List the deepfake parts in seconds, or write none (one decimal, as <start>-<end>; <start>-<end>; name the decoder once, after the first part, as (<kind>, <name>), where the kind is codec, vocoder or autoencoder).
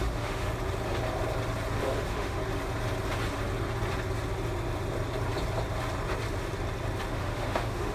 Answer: 0.0-0.5 (autoencoder, DAC-VAE); 1.8-2.4; 7.1-7.9